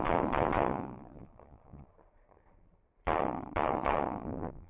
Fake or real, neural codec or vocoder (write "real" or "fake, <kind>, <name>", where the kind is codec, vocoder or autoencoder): fake, vocoder, Vocos